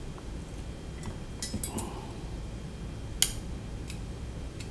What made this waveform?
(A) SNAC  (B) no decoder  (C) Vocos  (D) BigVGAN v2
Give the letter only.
B